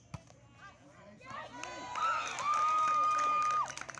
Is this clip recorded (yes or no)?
yes